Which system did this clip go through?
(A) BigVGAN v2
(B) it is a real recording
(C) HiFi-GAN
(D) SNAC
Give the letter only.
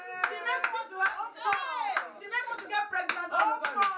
B